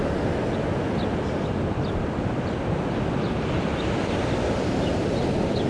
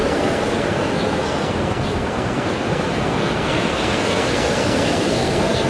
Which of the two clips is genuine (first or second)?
first